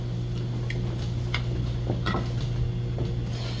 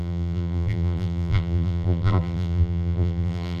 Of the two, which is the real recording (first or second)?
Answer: first